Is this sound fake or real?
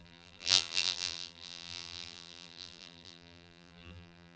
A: fake